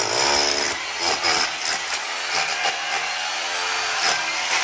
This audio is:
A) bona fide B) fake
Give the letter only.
A